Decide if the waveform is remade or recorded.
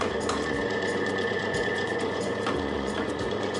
remade